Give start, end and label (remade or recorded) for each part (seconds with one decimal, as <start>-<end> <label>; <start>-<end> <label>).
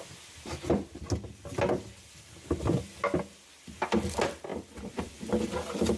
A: 0.0-6.0 recorded